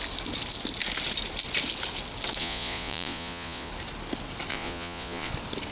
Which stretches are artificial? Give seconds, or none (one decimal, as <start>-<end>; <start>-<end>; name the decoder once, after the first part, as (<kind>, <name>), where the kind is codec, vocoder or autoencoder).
2.4-3.7 (vocoder, Vocos); 4.5-5.3